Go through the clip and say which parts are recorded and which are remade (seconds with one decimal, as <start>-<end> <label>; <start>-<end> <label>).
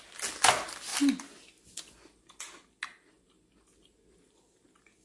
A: 0.0-5.0 recorded